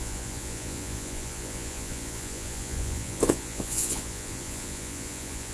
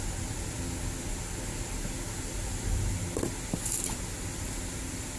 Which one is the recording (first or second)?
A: second